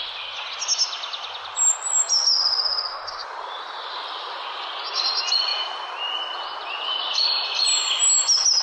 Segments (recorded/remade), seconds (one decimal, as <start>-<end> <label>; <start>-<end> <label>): 0.0-3.2 recorded; 3.2-3.7 remade; 3.7-8.6 recorded

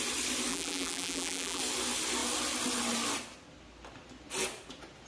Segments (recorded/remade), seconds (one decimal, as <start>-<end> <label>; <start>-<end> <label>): 0.0-0.5 recorded; 0.5-1.6 remade; 1.6-5.1 recorded

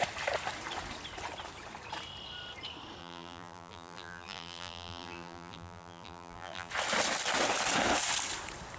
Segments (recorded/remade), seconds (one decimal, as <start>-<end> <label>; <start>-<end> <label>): 0.0-3.0 recorded; 3.0-6.7 remade; 6.7-8.8 recorded

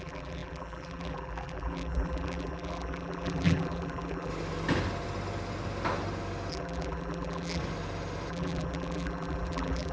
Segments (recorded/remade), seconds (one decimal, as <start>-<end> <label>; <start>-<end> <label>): 0.0-4.3 remade; 4.3-6.5 recorded; 6.5-7.6 remade; 7.6-8.3 recorded; 8.3-9.9 remade

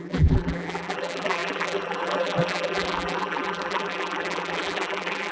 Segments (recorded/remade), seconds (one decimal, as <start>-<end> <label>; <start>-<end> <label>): 0.0-5.3 remade

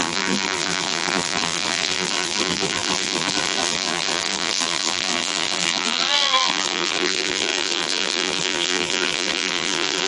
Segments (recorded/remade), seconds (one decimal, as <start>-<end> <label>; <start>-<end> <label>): 0.0-10.1 remade

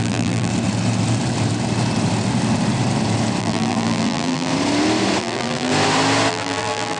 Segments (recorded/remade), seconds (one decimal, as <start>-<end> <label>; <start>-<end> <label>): 0.0-0.5 remade; 0.5-3.4 recorded; 3.4-4.5 remade; 4.5-5.2 recorded; 5.2-5.7 remade; 5.7-6.3 recorded; 6.3-7.0 remade

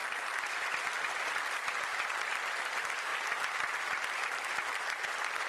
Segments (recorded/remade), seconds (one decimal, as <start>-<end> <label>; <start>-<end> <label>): 0.0-5.5 recorded